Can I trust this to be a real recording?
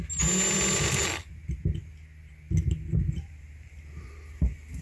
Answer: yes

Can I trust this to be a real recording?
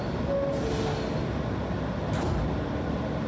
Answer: yes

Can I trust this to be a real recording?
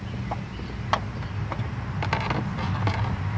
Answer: yes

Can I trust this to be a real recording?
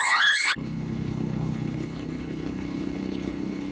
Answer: no